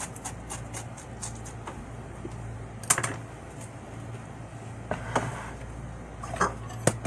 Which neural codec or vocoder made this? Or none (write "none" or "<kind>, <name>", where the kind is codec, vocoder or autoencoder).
none